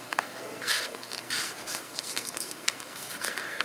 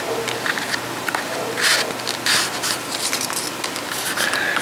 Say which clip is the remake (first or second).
first